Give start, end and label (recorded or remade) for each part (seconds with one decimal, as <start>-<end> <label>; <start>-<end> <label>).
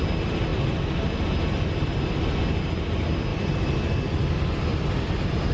0.0-3.3 recorded; 3.3-4.3 remade; 4.3-4.7 recorded; 4.7-5.5 remade